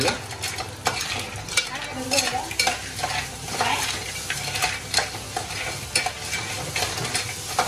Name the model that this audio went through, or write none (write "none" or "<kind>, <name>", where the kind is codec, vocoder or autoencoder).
none